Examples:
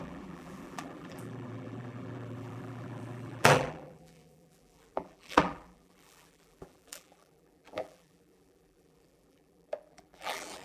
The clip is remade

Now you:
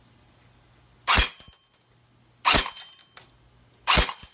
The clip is recorded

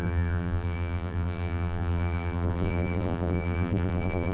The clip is remade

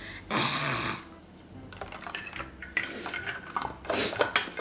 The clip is recorded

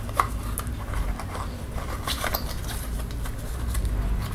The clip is recorded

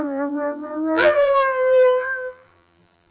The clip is remade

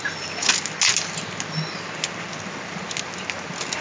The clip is recorded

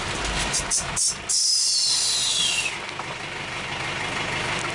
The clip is recorded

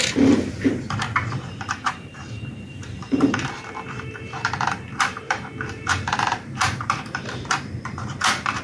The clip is remade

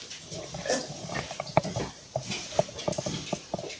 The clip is remade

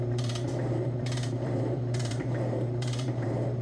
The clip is remade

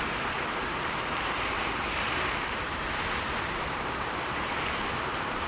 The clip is remade